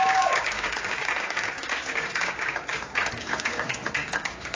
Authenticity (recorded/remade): remade